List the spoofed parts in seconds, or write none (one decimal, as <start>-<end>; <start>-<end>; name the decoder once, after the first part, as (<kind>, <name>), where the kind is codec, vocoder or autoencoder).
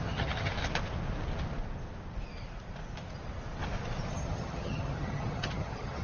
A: 0.0-0.5 (vocoder, HiFi-GAN); 4.1-6.0